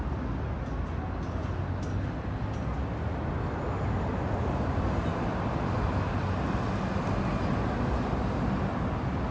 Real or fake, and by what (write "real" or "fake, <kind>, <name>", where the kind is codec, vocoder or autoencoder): real